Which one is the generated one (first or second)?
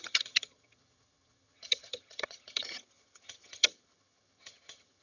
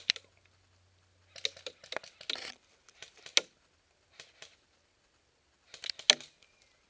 first